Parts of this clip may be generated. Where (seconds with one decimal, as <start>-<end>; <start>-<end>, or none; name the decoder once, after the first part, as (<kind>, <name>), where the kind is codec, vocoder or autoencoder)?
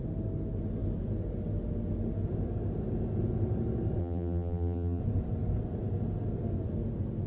4.0-5.0 (vocoder, BigVGAN v2)